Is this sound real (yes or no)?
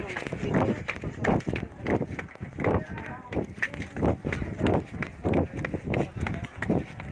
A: yes